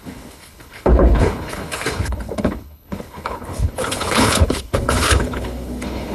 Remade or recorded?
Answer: remade